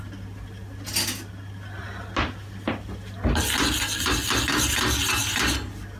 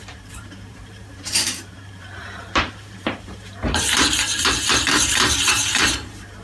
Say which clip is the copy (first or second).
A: second